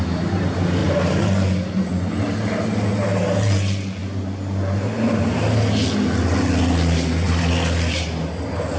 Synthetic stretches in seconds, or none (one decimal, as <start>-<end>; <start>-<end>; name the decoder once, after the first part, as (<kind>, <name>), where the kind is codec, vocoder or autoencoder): none